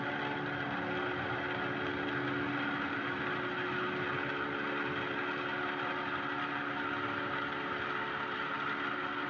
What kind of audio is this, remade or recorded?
recorded